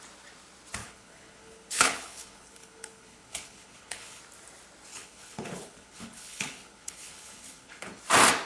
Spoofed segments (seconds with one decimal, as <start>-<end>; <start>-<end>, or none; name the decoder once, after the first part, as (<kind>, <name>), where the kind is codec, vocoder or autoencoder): 0.8-4.2 (codec, HILCodec); 4.9-8.0